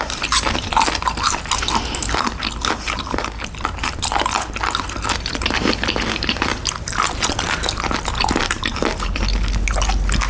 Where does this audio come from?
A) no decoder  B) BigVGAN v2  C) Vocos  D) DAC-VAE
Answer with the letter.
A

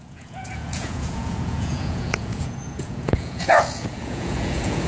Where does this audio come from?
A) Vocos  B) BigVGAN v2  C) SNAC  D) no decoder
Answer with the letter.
A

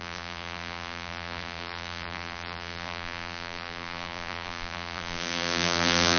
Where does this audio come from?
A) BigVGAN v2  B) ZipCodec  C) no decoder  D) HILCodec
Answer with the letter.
A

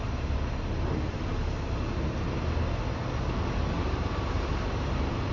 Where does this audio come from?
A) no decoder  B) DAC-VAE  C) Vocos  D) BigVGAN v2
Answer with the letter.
A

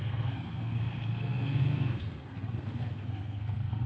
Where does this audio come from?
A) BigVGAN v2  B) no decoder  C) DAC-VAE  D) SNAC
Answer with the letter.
D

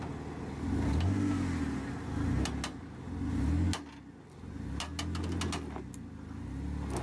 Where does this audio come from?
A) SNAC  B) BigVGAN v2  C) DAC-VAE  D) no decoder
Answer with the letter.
D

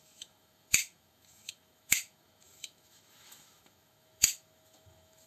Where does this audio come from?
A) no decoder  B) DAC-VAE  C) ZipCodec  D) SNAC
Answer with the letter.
B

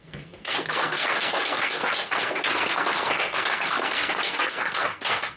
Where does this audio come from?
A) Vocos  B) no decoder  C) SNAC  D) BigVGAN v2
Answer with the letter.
C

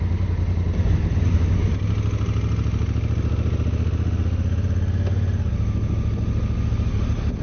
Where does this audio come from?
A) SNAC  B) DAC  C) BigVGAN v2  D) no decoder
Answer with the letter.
D